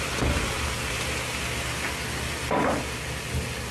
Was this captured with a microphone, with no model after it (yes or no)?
yes